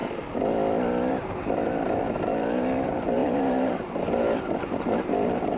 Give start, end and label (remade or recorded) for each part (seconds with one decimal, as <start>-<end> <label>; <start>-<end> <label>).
0.0-1.1 recorded; 1.1-5.6 remade